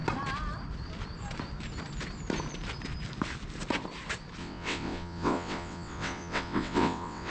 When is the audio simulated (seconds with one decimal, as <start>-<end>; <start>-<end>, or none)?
4.4-7.3